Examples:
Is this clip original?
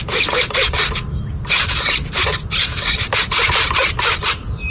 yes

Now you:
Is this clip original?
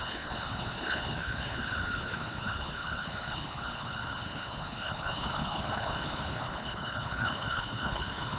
no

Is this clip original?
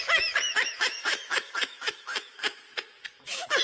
no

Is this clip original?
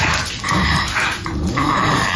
yes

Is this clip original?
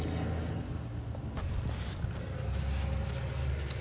yes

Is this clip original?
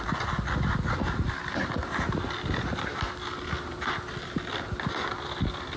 yes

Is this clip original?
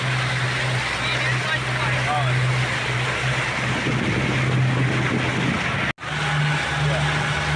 yes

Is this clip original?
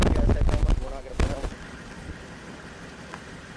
yes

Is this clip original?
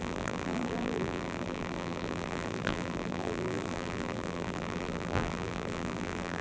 no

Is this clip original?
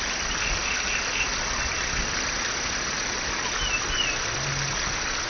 yes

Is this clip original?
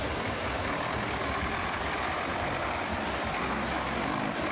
yes